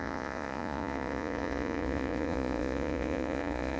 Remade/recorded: remade